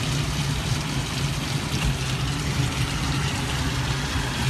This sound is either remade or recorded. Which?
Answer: recorded